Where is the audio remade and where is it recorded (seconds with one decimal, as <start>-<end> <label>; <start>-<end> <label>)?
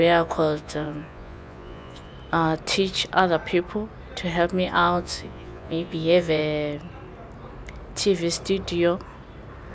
0.0-2.1 remade; 2.1-4.5 recorded; 4.5-6.4 remade; 6.4-9.7 recorded